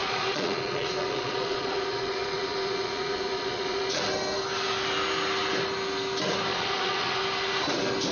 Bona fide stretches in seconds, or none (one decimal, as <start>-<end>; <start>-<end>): 4.0-6.5; 7.2-8.1